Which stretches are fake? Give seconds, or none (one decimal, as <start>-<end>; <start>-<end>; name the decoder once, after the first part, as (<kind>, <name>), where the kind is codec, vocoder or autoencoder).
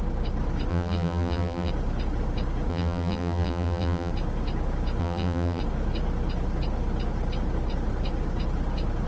0.7-1.7 (vocoder, BigVGAN v2); 2.7-4.1; 5.0-5.6